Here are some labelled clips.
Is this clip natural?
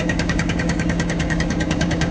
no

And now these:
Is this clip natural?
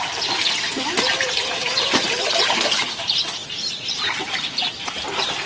no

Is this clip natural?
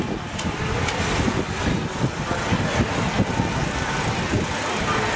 yes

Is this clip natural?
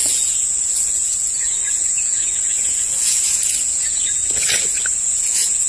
no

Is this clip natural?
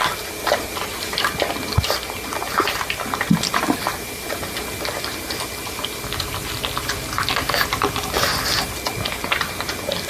yes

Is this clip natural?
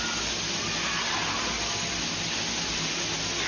yes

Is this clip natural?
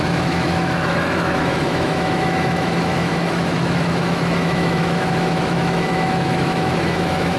no